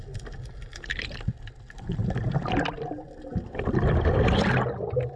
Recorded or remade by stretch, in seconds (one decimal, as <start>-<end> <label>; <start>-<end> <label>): 0.0-5.2 recorded